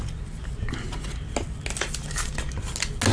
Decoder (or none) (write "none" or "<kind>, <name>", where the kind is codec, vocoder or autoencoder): none